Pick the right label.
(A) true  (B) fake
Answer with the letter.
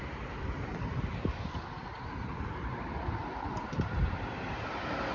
B